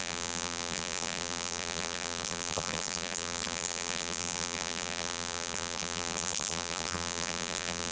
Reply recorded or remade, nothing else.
remade